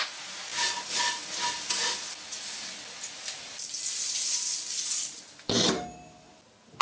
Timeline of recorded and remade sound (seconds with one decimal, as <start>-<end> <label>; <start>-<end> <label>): 0.0-6.8 recorded